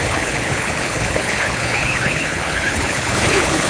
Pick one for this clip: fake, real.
fake